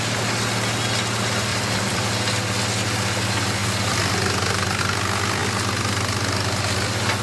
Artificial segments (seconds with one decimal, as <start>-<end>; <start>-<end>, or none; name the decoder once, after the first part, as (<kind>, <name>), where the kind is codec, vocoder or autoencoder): 1.5-2.1 (vocoder, BigVGAN v2); 3.6-4.8